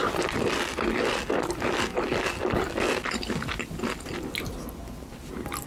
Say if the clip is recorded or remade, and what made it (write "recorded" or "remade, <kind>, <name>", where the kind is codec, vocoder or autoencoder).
recorded